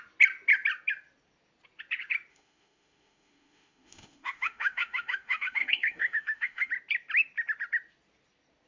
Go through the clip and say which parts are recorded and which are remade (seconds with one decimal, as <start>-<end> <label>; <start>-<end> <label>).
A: 0.0-2.3 recorded; 2.3-6.7 remade; 6.7-8.7 recorded